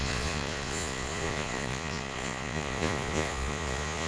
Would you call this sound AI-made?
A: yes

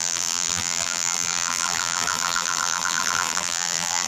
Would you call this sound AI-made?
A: yes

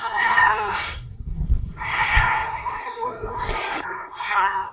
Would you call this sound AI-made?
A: yes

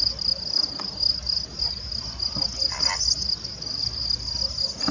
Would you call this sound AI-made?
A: no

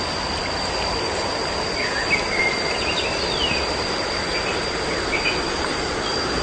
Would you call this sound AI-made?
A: no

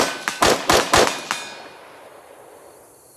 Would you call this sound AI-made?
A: no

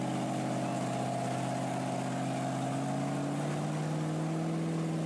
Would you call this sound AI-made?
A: no